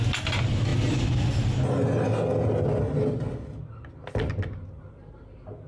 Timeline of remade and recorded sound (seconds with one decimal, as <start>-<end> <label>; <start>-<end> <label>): 0.0-5.7 recorded